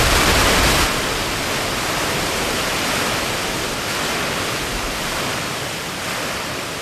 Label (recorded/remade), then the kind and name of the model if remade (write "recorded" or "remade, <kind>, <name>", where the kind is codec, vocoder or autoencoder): recorded